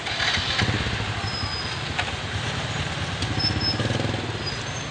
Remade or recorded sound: recorded